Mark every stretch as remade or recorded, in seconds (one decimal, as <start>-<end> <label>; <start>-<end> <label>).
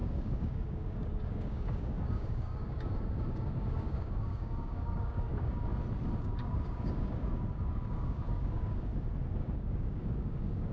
0.0-5.7 remade; 5.7-6.2 recorded; 6.2-8.9 remade; 8.9-9.4 recorded; 9.4-10.7 remade